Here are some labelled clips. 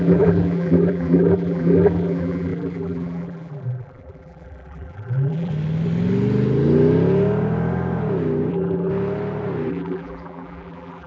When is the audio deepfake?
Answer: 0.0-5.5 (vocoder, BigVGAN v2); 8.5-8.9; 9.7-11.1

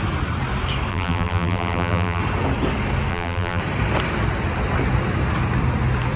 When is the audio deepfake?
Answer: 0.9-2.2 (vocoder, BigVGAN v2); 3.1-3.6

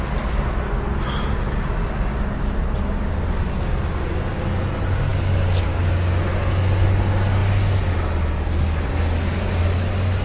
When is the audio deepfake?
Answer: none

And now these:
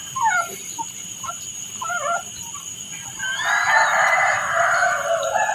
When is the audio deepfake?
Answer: 0.0-2.0 (vocoder, BigVGAN v2); 4.3-5.5

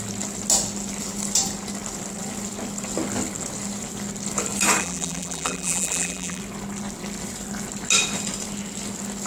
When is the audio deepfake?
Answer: 4.8-6.4 (vocoder, BigVGAN v2)